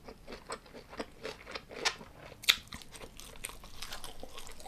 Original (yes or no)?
yes